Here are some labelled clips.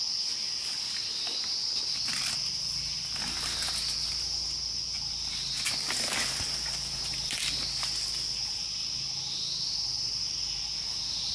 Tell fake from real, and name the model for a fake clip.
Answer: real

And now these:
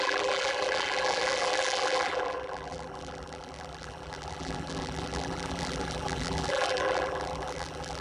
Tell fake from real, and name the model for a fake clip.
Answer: fake, vocoder, BigVGAN v2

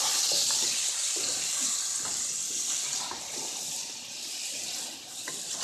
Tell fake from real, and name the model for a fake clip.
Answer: real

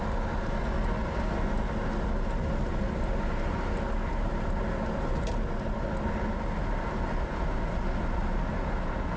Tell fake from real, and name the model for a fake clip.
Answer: real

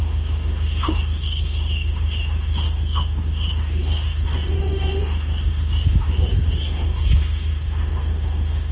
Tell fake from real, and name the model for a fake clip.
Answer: fake, autoencoder, DAC-VAE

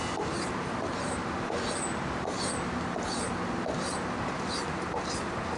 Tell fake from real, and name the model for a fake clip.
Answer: real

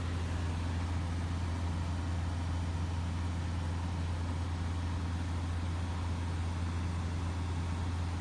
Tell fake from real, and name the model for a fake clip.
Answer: real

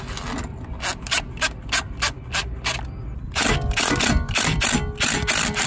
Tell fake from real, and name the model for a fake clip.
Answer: real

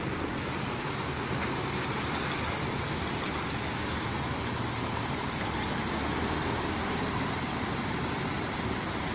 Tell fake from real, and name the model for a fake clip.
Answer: real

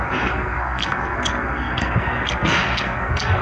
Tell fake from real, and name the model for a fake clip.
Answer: fake, codec, SNAC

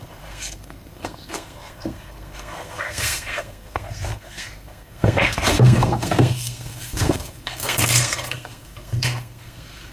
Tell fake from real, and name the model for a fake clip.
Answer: fake, codec, SNAC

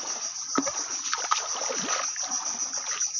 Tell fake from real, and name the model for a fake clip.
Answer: real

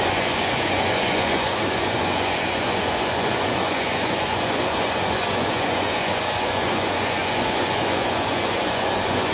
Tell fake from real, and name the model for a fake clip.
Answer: fake, vocoder, Vocos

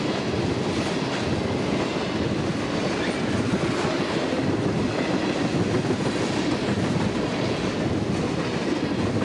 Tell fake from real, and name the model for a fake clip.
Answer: real